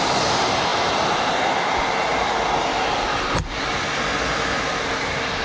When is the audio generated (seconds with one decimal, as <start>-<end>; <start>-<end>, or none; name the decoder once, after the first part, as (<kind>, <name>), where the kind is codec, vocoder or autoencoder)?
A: none